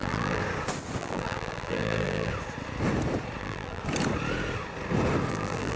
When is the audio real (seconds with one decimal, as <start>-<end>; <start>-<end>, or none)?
0.4-1.0; 2.3-3.4; 3.8-5.3